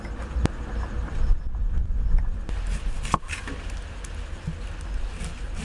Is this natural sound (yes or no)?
yes